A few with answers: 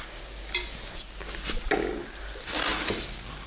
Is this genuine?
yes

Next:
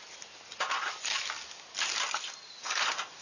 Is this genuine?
yes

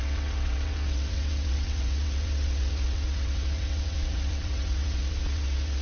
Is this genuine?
no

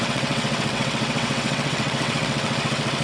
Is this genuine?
no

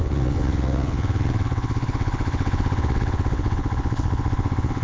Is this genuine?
no